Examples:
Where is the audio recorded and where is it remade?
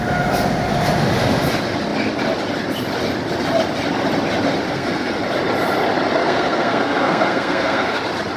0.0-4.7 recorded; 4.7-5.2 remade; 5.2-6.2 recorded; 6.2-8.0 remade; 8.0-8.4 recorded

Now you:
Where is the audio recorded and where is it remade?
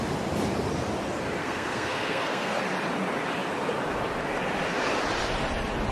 0.0-1.4 recorded; 1.4-2.6 remade; 2.6-5.9 recorded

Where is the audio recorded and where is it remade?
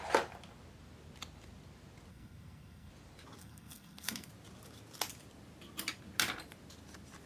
0.0-2.1 recorded; 2.1-2.9 remade; 2.9-3.4 recorded; 3.4-4.3 remade; 4.3-7.3 recorded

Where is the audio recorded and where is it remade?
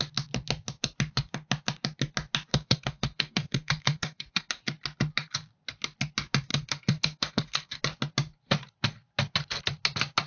0.0-2.5 recorded; 2.5-4.5 remade; 4.5-6.5 recorded; 6.5-7.8 remade; 7.8-10.3 recorded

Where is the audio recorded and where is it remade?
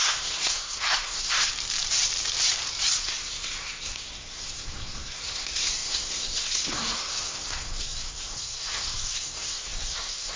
0.0-1.5 remade; 1.5-3.0 recorded; 3.0-10.4 remade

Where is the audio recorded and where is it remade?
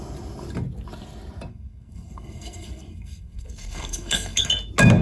0.0-1.5 recorded; 1.5-4.5 remade; 4.5-5.0 recorded